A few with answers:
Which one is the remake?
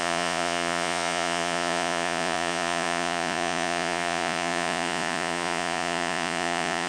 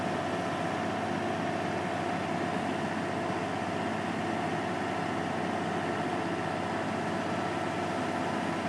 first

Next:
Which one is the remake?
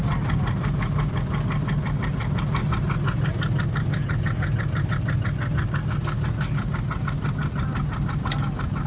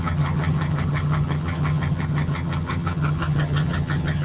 second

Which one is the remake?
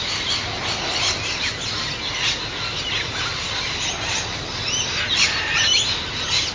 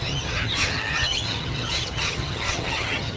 second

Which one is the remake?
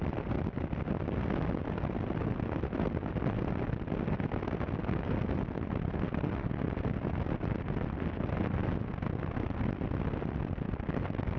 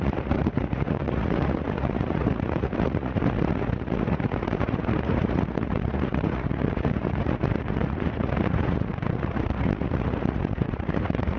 second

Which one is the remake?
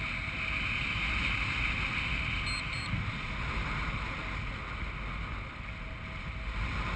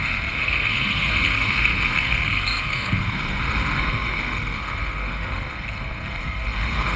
second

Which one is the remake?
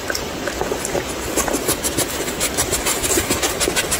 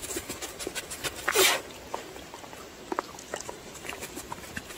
second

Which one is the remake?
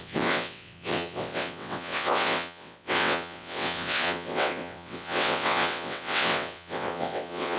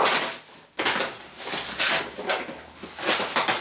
first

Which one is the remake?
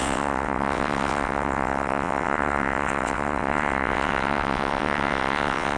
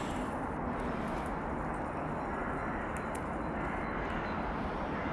first